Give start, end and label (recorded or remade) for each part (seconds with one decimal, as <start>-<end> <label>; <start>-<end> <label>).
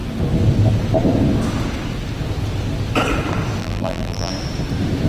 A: 0.0-3.6 recorded; 3.6-4.3 remade; 4.3-5.1 recorded